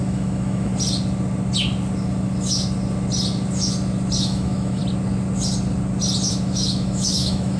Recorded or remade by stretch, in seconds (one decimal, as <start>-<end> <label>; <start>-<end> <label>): 0.0-0.7 remade; 0.7-4.2 recorded; 4.2-4.8 remade; 4.8-6.3 recorded; 6.3-7.6 remade